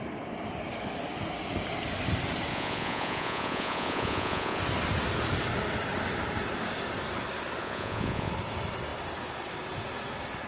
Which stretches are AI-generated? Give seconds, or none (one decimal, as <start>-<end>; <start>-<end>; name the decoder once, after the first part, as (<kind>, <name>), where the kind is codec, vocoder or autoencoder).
2.5-4.6 (vocoder, Vocos); 7.6-8.3